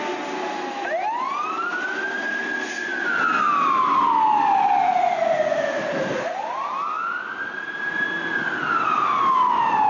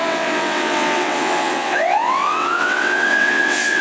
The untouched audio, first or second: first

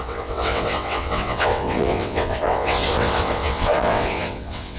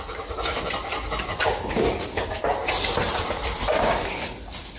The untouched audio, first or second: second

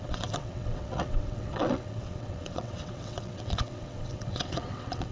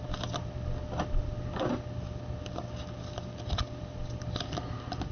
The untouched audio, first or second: second